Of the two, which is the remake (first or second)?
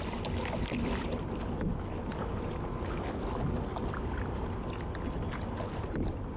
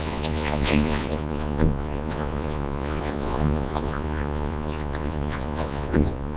second